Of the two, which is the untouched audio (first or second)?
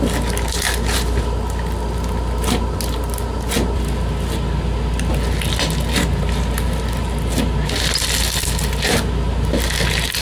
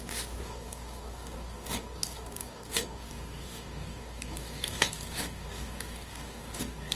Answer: first